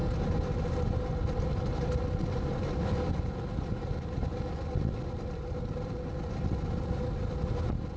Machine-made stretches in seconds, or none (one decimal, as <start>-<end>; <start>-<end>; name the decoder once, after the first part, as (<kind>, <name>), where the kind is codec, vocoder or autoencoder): none